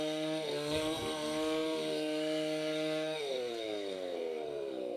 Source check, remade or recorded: remade